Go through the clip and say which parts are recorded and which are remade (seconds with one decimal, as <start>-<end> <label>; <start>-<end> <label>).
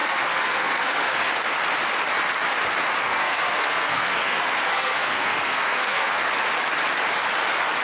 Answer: 0.0-1.3 remade; 1.3-3.0 recorded; 3.0-6.2 remade; 6.2-7.8 recorded